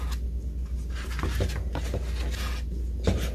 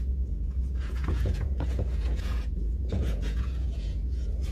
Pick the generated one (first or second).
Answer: second